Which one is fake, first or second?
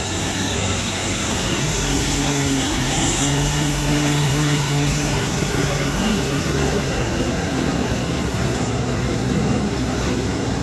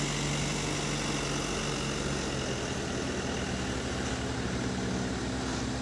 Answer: first